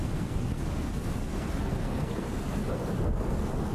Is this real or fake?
fake